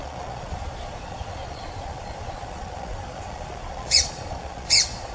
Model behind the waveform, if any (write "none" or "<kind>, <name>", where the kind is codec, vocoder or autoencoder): vocoder, Vocos